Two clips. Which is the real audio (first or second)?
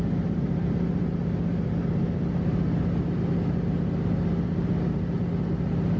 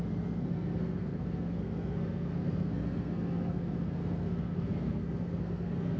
first